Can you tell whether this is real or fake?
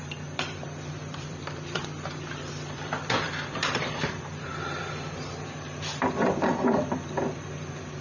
fake